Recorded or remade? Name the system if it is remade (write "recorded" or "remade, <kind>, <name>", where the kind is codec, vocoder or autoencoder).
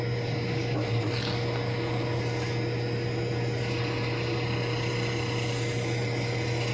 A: recorded